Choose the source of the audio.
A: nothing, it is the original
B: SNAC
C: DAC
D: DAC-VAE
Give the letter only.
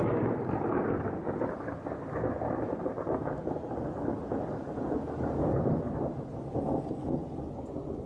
A